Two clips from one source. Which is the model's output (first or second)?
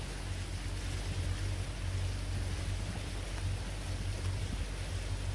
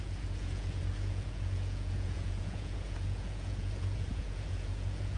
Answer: second